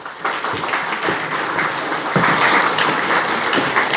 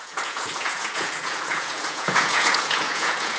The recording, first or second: first